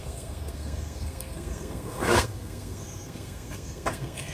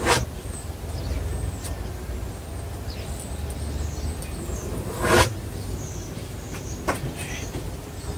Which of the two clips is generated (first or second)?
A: first